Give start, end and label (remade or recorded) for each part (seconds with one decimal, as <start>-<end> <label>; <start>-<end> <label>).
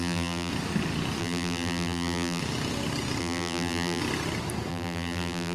0.0-0.5 remade; 0.5-1.2 recorded; 1.2-2.4 remade; 2.4-3.2 recorded; 3.2-4.0 remade; 4.0-4.7 recorded; 4.7-5.5 remade